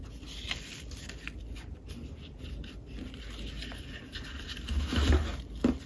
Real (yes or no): yes